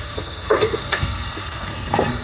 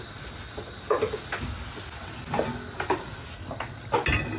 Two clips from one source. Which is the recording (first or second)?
second